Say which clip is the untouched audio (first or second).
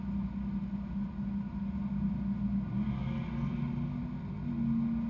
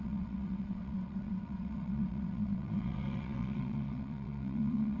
first